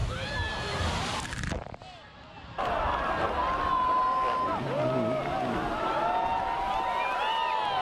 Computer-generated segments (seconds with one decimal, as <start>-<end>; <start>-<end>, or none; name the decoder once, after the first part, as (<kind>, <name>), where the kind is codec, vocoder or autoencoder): none